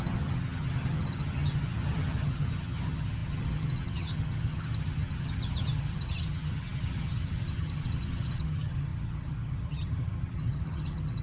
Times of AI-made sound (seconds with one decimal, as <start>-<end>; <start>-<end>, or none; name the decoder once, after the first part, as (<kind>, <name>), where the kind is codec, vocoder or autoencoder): 0.0-11.2 (vocoder, HiFi-GAN)